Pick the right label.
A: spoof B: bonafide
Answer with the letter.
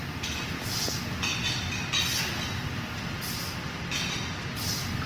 B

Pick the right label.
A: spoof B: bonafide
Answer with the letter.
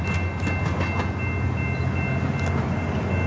B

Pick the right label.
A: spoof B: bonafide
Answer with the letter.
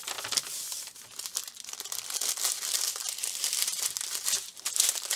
B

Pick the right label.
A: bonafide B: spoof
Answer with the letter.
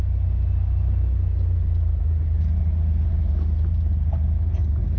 A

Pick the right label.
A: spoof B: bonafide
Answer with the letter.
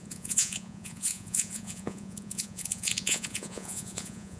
A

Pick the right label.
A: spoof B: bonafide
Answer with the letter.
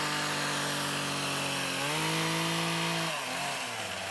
B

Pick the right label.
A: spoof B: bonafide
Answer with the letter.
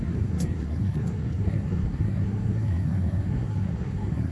A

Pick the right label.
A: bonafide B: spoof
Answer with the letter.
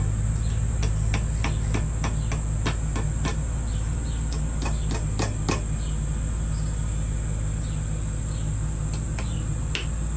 A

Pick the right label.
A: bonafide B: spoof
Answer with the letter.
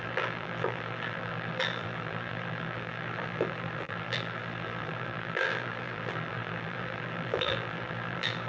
B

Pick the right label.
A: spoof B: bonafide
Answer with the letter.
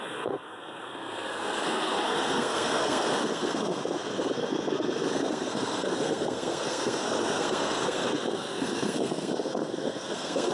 A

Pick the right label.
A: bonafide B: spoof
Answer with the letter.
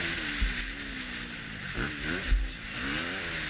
A